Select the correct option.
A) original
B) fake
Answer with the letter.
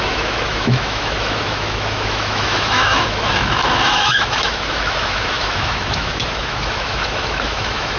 B